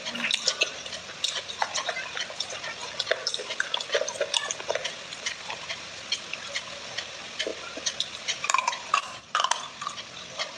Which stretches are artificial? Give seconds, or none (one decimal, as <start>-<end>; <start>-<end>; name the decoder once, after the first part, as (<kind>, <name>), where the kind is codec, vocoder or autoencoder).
0.0-2.8 (vocoder, BigVGAN v2); 4.9-10.6